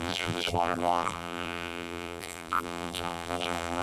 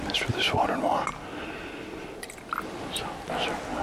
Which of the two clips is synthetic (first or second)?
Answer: first